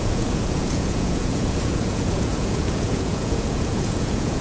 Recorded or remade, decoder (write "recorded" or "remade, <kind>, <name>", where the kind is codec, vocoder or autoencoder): remade, vocoder, Vocos